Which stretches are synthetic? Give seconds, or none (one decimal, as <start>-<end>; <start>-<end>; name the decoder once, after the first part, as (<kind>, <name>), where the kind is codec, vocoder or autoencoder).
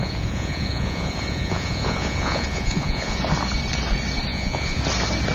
0.0-3.2 (vocoder, Vocos); 4.3-4.8